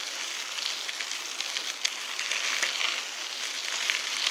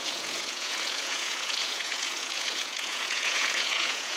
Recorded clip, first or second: first